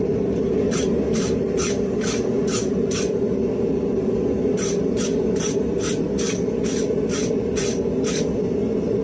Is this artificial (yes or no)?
no